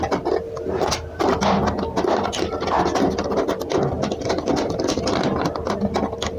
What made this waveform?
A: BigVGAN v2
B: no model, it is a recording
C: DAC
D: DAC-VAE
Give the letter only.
B